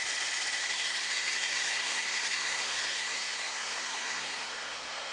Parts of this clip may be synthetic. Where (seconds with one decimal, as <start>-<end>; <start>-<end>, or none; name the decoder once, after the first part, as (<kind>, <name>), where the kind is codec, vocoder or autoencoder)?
0.6-5.1 (codec, SNAC)